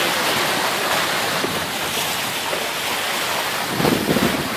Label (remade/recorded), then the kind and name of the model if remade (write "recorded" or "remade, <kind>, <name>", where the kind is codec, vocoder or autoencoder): recorded